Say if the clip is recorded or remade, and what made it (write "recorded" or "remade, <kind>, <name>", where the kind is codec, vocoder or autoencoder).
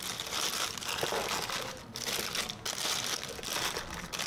recorded